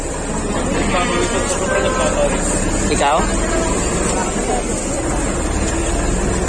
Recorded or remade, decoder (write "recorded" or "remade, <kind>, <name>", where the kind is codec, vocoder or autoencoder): recorded